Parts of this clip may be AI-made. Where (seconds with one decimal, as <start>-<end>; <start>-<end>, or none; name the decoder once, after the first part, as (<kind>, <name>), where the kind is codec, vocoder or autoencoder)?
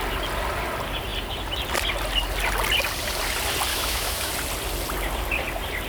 3.7-4.3 (autoencoder, DAC-VAE)